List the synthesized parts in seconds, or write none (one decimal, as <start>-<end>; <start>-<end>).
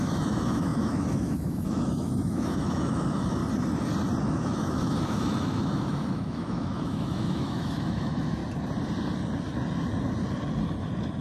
0.0-3.4; 4.2-8.4